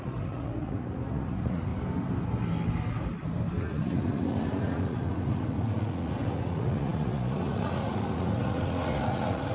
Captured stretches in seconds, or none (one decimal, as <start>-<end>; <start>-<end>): 1.7-3.6